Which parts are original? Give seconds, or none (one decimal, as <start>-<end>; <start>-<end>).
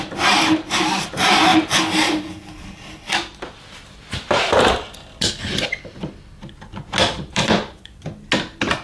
0.0-7.4; 8.0-8.8